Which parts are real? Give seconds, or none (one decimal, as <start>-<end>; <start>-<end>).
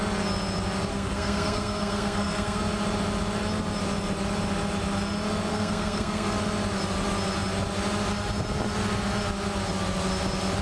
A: 0.0-0.9; 2.6-5.5; 6.4-10.6